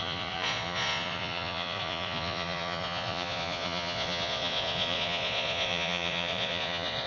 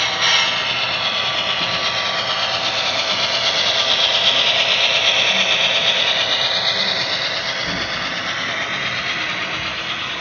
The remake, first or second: first